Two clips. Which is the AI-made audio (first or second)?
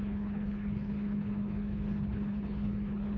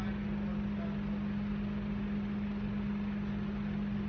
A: first